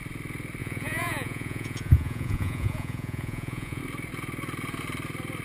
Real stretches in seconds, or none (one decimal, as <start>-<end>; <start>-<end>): 0.0-0.6; 3.8-5.4